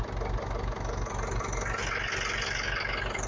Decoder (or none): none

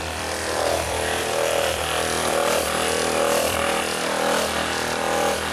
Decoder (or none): vocoder, BigVGAN v2